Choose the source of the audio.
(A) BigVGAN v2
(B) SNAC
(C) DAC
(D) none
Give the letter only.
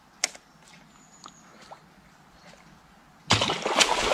D